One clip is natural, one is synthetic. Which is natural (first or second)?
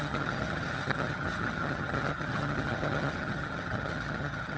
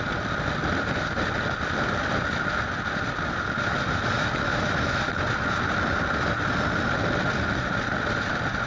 second